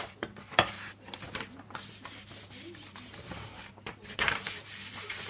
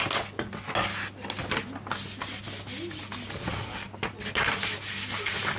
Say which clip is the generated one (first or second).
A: first